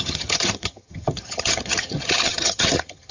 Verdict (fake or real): fake